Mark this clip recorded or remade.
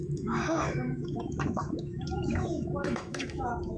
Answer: remade